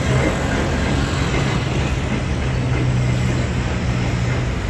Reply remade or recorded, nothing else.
recorded